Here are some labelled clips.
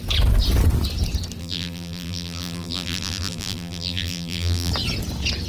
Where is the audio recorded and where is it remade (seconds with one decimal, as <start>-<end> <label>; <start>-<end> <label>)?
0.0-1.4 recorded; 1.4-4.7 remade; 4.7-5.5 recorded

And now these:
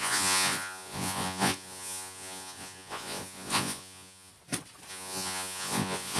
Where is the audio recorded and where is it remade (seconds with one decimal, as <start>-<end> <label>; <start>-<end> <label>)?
0.0-4.3 remade; 4.3-4.9 recorded; 4.9-6.2 remade

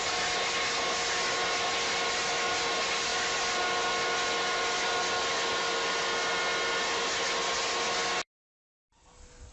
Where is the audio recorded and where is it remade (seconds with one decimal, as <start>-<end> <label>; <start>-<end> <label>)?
0.0-9.5 recorded

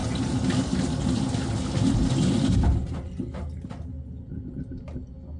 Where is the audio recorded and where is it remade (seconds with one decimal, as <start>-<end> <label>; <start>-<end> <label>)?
0.0-5.4 recorded